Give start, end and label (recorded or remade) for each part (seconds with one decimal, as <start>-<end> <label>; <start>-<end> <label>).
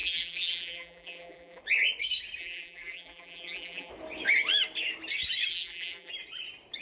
0.0-1.6 remade; 1.6-2.4 recorded; 2.4-3.9 remade; 3.9-5.5 recorded; 5.5-6.1 remade; 6.1-6.8 recorded